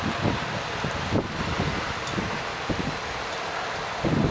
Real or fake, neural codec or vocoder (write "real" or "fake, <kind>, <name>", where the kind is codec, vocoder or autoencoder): real